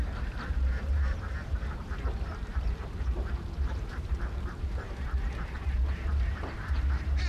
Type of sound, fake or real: fake